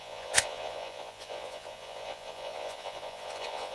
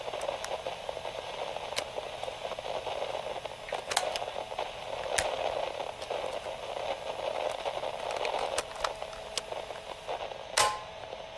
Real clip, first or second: second